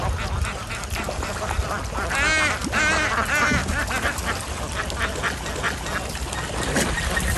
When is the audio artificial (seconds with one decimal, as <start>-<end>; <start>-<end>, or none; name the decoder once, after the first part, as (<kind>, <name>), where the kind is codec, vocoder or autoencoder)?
none